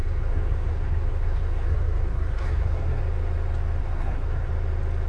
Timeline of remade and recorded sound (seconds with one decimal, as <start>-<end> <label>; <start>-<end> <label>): 0.0-3.0 remade; 3.0-3.8 recorded; 3.8-4.5 remade; 4.5-5.1 recorded

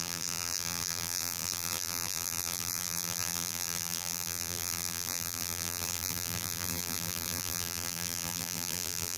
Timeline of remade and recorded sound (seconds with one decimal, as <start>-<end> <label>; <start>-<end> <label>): 0.0-9.2 remade

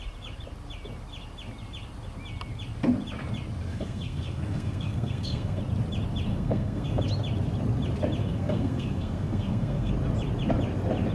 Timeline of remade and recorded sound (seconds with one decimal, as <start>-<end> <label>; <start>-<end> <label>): 0.0-3.7 recorded; 3.7-5.6 remade; 5.6-6.3 recorded; 6.3-7.0 remade; 7.0-8.2 recorded; 8.2-9.9 remade; 9.9-11.1 recorded

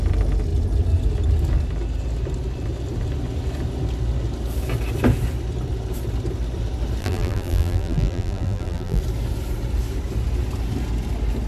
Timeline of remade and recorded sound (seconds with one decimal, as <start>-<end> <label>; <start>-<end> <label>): 0.0-7.0 recorded; 7.0-9.0 remade; 9.0-11.5 recorded

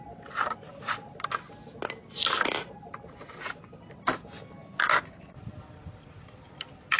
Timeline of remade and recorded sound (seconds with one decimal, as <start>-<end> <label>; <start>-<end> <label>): 0.0-7.0 recorded

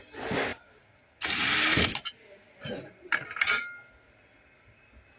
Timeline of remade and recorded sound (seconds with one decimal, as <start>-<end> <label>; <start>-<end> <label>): 0.0-5.2 recorded

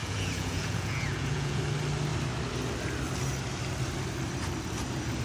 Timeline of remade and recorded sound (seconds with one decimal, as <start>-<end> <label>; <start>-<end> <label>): 0.0-1.6 remade; 1.6-5.2 recorded